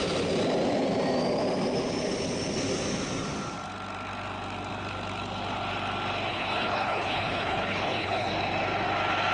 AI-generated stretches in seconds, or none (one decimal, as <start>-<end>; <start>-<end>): 6.3-8.3